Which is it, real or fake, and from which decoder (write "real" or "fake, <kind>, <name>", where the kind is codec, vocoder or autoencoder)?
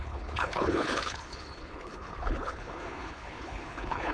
fake, codec, HILCodec